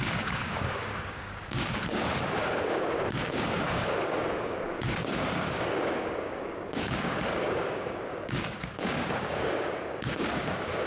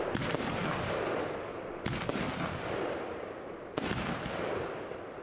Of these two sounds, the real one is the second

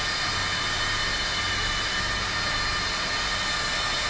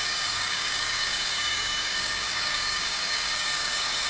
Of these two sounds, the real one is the first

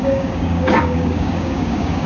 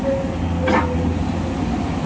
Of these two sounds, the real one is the second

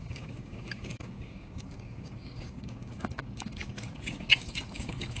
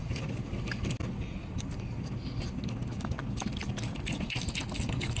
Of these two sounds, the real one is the second